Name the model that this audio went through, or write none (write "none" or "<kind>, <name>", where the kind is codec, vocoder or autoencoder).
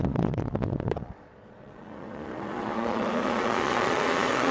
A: vocoder, Vocos